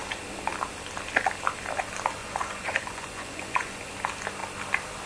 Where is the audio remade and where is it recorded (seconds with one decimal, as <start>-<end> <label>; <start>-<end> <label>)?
0.0-2.2 recorded; 2.2-3.9 remade; 3.9-5.1 recorded